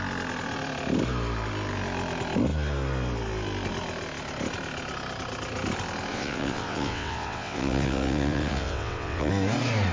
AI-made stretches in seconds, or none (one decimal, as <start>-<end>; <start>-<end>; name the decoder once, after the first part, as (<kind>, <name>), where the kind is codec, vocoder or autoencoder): 6.1-9.3 (vocoder, WaveNeXt)